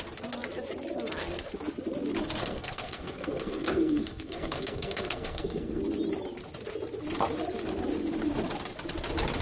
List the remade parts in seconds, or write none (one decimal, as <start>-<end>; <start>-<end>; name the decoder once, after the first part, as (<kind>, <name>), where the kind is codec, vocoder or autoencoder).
2.4-5.8 (codec, SNAC)